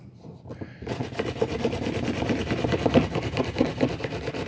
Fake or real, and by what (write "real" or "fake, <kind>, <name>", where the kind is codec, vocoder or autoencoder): real